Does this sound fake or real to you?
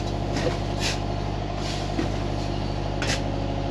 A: real